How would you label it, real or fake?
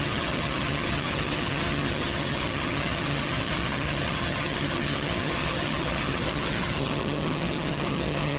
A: fake